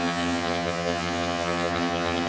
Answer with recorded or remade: remade